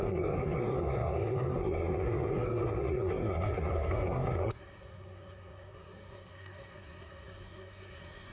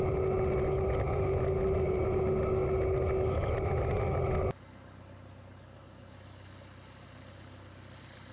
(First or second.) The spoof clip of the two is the first